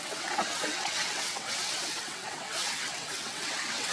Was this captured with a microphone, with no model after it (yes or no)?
no